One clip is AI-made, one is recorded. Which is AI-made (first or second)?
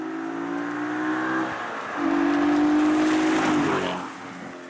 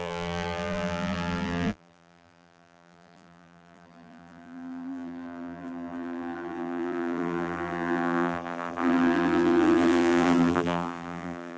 second